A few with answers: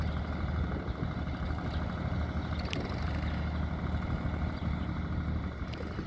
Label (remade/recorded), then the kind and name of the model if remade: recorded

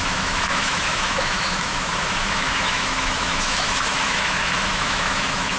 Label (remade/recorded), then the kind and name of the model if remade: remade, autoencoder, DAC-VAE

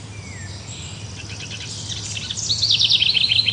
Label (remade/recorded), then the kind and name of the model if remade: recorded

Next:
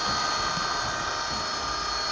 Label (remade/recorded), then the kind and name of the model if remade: recorded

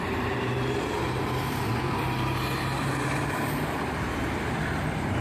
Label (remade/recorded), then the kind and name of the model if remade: remade, vocoder, BigVGAN v2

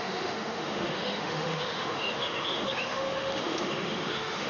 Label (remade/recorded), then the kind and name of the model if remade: remade, autoencoder, DAC-VAE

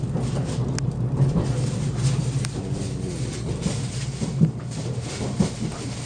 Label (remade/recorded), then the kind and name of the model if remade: recorded